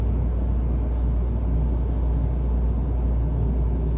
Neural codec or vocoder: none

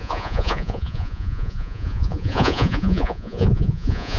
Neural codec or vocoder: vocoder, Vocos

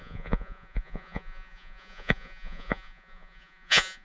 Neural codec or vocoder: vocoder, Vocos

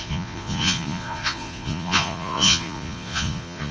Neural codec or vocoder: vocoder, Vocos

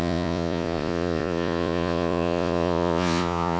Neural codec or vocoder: vocoder, Vocos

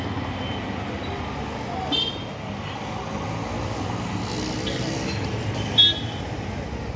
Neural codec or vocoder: none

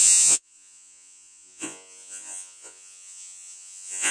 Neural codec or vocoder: vocoder, Vocos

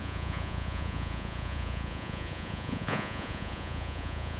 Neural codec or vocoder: vocoder, Vocos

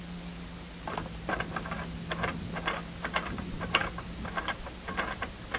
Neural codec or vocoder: none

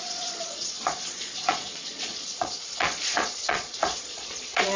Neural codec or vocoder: vocoder, Vocos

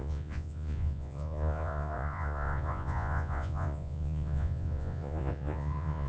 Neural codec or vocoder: vocoder, Vocos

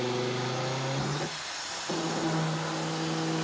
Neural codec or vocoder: none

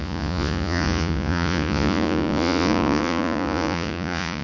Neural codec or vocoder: vocoder, Vocos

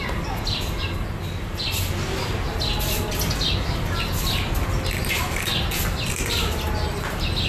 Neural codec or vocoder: none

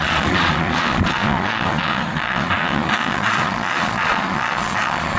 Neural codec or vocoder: vocoder, Vocos